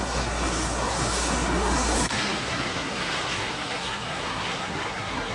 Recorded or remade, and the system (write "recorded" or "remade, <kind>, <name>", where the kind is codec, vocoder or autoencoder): remade, codec, SNAC